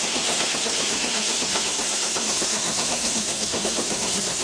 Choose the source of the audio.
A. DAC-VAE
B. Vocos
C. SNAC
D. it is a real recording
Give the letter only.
C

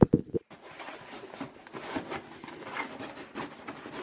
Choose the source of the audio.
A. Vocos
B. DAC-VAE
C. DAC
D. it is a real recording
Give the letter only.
D